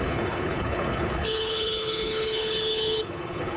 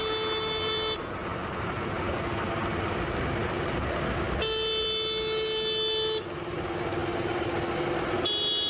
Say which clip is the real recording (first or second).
second